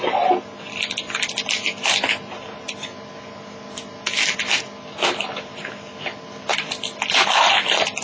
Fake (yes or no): no